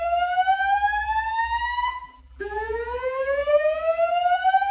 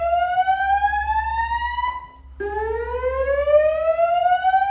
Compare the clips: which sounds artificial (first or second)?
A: first